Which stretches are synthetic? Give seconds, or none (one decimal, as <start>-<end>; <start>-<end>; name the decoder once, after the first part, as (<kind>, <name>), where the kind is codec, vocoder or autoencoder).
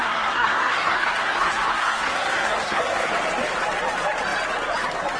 0.0-3.1 (codec, SNAC)